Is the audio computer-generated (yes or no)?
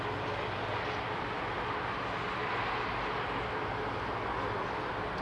no